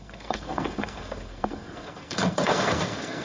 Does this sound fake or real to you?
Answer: fake